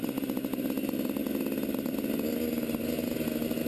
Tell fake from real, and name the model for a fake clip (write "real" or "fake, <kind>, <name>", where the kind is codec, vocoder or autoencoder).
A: real